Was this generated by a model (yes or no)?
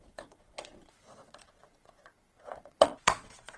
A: yes